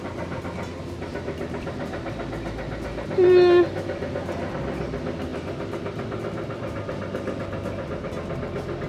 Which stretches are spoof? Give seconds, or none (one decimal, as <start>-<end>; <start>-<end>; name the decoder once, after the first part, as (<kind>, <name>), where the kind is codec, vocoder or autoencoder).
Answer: none